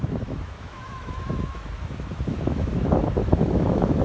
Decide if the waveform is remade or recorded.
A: remade